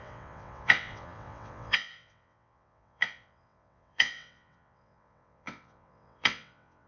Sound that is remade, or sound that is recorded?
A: remade